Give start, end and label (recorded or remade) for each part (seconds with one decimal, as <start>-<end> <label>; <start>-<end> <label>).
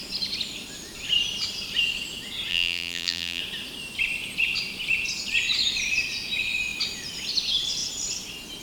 0.0-2.5 recorded; 2.5-3.4 remade; 3.4-8.6 recorded